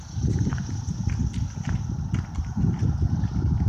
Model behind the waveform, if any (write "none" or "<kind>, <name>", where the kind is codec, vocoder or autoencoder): none